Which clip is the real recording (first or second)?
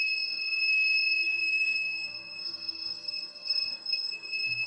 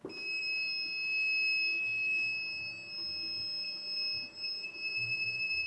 second